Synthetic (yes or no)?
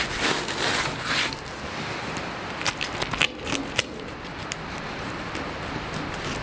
no